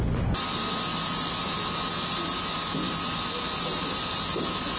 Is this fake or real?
real